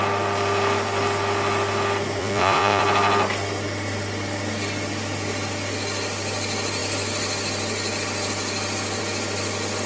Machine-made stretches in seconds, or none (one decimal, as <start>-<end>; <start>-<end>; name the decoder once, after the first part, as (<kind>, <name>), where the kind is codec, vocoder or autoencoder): 2.2-2.8 (vocoder, Vocos)